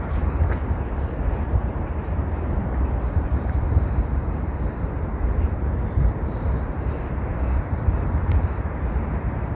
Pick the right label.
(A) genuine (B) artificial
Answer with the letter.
B